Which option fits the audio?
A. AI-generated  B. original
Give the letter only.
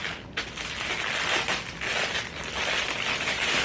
B